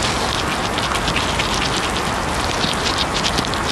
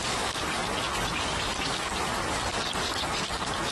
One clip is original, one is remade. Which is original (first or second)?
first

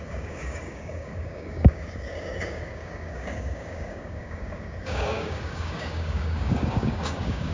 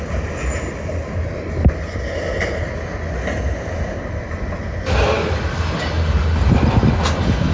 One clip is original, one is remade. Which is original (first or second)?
second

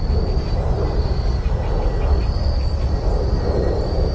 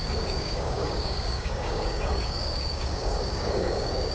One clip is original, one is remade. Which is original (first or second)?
first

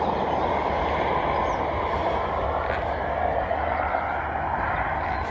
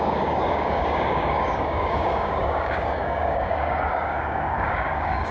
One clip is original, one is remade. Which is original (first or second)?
first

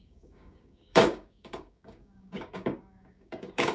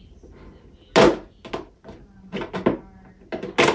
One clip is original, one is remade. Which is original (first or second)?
second